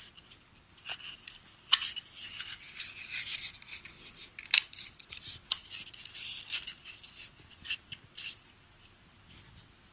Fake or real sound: fake